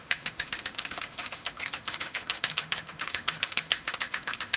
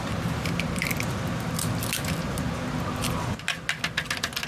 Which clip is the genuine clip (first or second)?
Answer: second